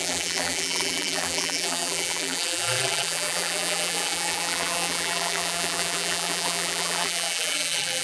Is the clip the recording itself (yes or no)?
no